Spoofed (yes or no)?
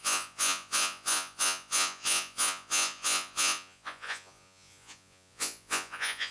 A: yes